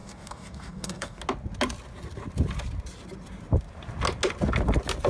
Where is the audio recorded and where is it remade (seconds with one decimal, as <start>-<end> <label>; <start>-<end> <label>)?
0.0-1.2 remade; 1.2-5.1 recorded